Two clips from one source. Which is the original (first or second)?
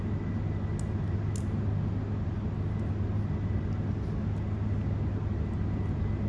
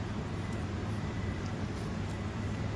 first